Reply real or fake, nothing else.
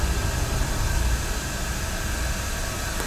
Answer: real